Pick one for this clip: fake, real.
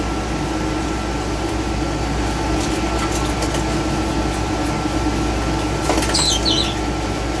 real